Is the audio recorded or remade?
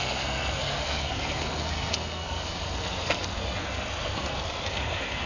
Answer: remade